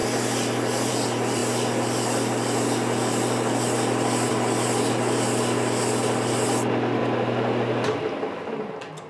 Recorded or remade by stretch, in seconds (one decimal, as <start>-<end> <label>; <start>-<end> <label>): 0.0-9.1 recorded